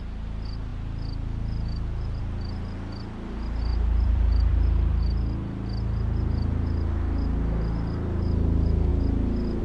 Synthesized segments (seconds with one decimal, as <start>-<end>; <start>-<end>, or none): 3.7-4.9; 8.9-9.6